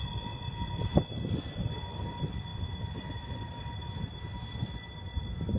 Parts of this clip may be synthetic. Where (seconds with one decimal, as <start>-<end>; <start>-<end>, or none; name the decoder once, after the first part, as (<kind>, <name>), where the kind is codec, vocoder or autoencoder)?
none